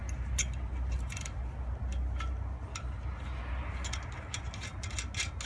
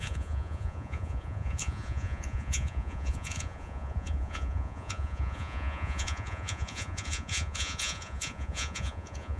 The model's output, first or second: second